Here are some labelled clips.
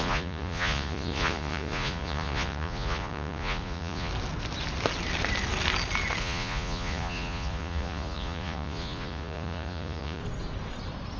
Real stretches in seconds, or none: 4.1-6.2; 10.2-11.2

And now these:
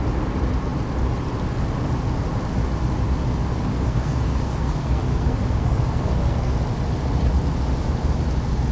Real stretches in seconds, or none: 0.0-3.7; 6.5-8.7

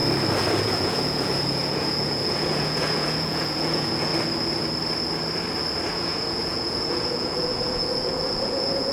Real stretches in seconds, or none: 0.0-0.6; 4.1-5.9

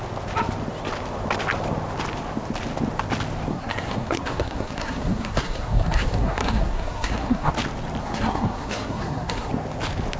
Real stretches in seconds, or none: 0.0-3.5; 7.5-8.0; 9.5-10.2

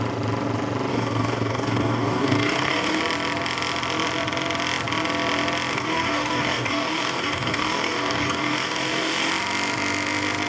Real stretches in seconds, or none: 0.0-0.9; 3.0-5.7; 9.3-10.5